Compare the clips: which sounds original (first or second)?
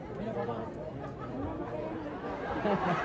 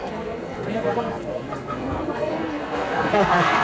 first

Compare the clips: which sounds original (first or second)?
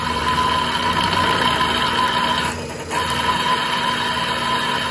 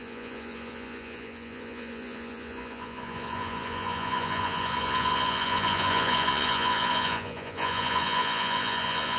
first